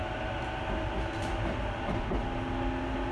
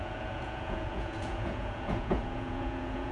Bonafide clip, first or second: first